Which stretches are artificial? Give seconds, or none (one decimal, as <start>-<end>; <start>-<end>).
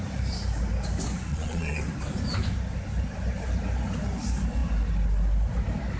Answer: 1.3-1.8